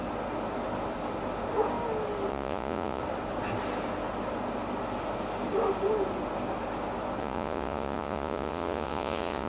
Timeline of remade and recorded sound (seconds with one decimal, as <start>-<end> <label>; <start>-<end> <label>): 0.0-2.3 recorded; 2.3-3.0 remade; 3.0-7.2 recorded; 7.2-9.5 remade